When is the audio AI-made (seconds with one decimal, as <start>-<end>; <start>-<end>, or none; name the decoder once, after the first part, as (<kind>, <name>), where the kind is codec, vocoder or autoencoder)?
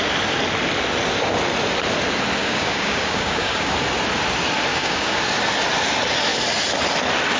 2.4-3.7 (codec, DAC); 4.7-5.2